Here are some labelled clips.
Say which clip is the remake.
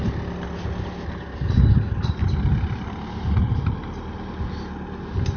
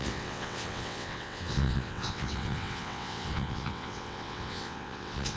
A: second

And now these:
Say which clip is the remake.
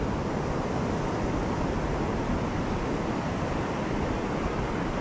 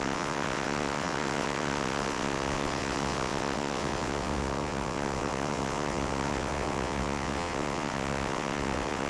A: second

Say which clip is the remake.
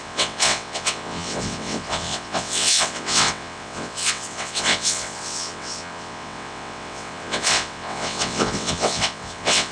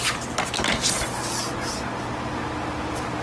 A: first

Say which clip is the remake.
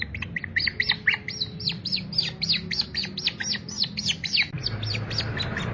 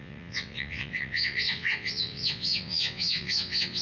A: second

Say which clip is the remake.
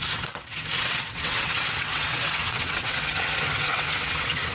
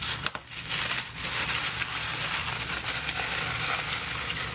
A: first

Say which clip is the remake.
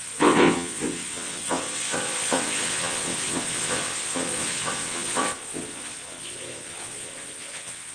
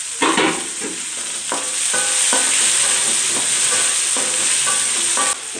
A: first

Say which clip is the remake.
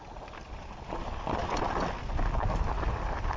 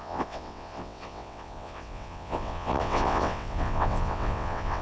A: second